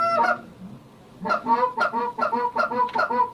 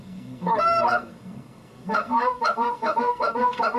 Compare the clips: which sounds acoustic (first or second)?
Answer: first